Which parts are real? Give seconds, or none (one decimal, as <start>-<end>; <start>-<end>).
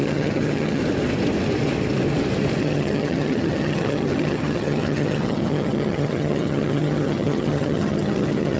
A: 0.8-2.6